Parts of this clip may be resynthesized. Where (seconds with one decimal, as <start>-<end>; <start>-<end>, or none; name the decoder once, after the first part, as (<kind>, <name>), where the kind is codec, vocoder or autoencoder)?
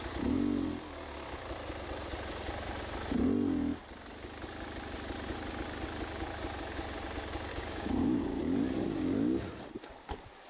7.5-8.4 (codec, DAC)